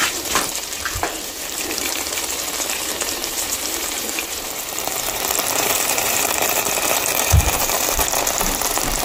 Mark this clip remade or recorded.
remade